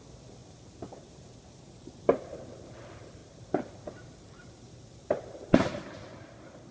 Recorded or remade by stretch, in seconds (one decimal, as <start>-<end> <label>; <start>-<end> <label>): 0.0-0.4 recorded; 0.4-2.4 remade; 2.4-3.2 recorded; 3.2-3.8 remade; 3.8-4.4 recorded; 4.4-5.2 remade; 5.2-6.7 recorded